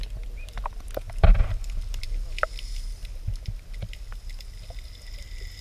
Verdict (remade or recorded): recorded